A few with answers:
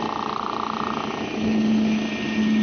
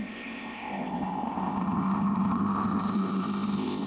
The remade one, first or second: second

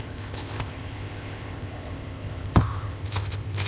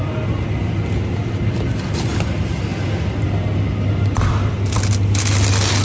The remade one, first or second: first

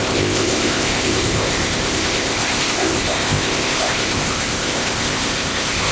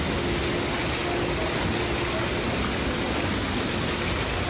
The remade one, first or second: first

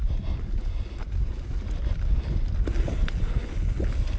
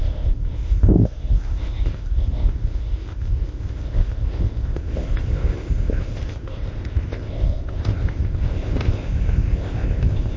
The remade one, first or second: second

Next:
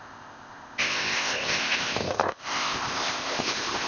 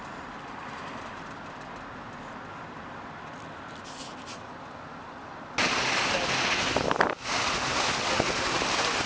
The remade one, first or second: first